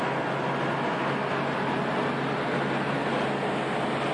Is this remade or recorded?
recorded